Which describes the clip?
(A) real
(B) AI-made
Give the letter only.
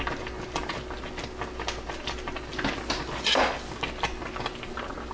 A